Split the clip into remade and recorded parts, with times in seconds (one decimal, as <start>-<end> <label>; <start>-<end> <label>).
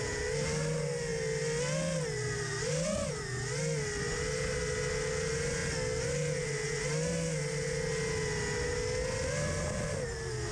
0.0-10.5 recorded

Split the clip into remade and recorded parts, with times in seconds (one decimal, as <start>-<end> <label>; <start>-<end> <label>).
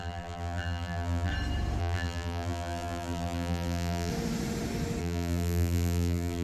0.0-1.3 remade; 1.3-1.8 recorded; 1.8-4.1 remade; 4.1-5.0 recorded; 5.0-6.4 remade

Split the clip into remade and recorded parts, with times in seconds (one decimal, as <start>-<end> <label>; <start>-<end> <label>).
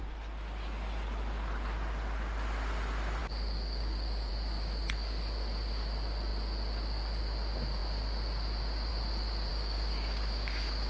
0.0-3.2 recorded; 3.2-4.3 remade; 4.3-9.5 recorded; 9.5-10.9 remade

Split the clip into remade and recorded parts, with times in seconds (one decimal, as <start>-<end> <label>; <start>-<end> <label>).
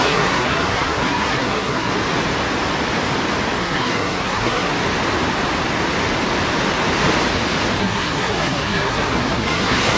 0.0-1.9 remade; 1.9-3.6 recorded; 3.6-4.7 remade; 4.7-7.8 recorded; 7.8-10.0 remade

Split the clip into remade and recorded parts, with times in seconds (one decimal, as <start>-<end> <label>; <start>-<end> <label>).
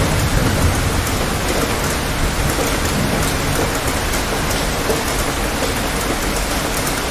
0.0-7.1 recorded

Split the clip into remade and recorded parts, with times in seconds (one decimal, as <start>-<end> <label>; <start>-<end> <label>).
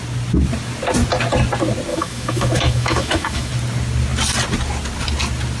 0.0-1.9 recorded; 1.9-3.5 remade; 3.5-5.6 recorded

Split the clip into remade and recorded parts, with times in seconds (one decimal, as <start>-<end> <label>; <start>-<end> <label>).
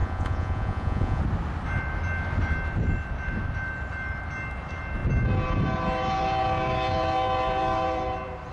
0.0-1.2 remade; 1.2-8.5 recorded